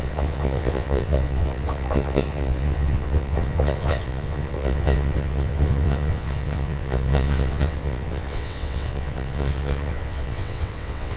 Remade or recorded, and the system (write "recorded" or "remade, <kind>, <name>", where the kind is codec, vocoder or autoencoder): remade, vocoder, WaveNeXt